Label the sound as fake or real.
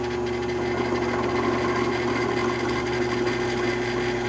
real